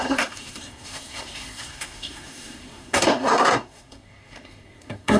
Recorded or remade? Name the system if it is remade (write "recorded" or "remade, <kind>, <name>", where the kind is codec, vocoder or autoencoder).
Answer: remade, codec, SNAC